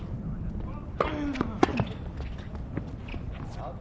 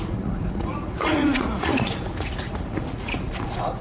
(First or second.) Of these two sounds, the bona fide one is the first